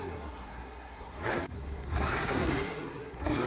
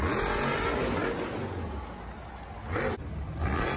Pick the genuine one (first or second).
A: second